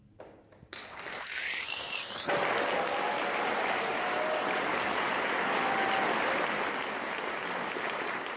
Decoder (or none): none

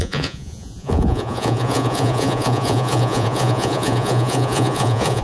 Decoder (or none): vocoder, Vocos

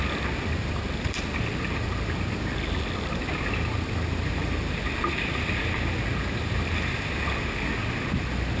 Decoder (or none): none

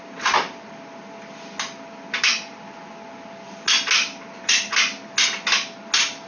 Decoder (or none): none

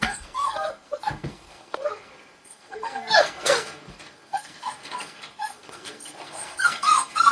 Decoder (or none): codec, SNAC